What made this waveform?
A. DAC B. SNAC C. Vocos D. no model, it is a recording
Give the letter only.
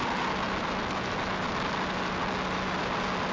D